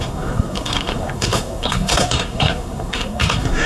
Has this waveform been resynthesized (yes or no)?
yes